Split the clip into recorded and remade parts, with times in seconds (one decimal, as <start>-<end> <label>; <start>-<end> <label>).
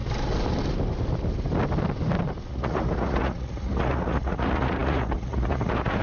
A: 0.0-2.5 recorded; 2.5-6.0 remade